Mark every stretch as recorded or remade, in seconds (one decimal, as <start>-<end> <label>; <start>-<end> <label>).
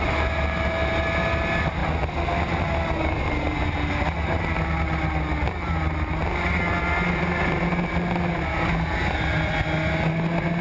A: 0.0-10.6 recorded